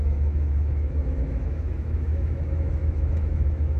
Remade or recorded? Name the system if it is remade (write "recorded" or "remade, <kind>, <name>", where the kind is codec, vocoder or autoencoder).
remade, autoencoder, DAC-VAE